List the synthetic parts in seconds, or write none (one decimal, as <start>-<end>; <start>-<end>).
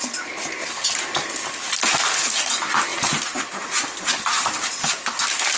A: 0.6-1.8